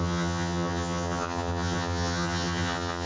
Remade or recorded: remade